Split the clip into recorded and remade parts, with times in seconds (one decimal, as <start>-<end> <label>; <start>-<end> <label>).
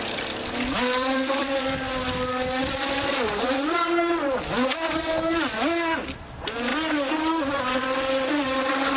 0.0-9.0 recorded